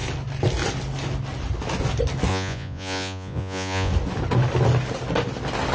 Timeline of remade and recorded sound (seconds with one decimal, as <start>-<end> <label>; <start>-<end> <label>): 0.0-2.3 recorded; 2.3-3.9 remade; 3.9-5.7 recorded